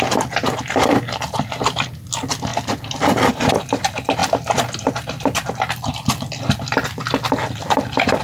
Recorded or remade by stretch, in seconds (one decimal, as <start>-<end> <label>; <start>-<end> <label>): 0.0-2.5 recorded; 2.5-3.3 remade; 3.3-7.4 recorded; 7.4-8.2 remade